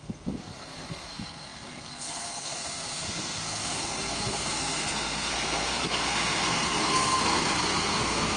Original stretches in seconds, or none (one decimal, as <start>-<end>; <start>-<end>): none